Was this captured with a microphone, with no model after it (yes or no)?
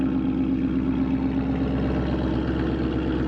yes